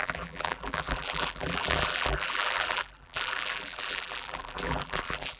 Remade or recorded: remade